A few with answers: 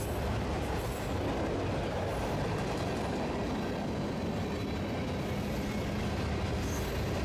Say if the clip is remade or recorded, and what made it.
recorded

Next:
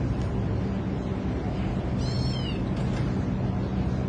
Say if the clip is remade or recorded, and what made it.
recorded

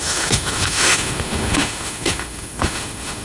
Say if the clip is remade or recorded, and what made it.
remade, autoencoder, DAC-VAE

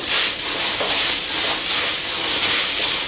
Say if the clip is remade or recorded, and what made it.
recorded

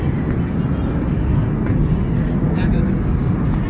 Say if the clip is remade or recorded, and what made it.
recorded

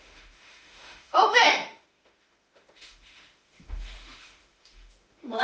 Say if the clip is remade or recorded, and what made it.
remade, autoencoder, DAC-VAE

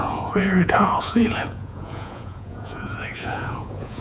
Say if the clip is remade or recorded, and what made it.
remade, vocoder, Vocos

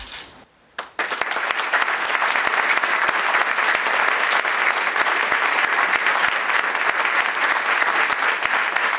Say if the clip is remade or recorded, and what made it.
recorded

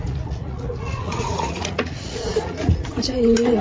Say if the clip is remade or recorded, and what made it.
remade, vocoder, Vocos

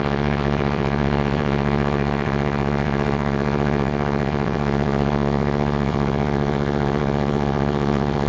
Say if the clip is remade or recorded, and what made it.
remade, vocoder, WaveNeXt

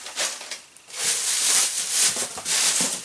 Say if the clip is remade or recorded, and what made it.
recorded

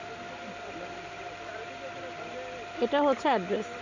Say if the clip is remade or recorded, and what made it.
recorded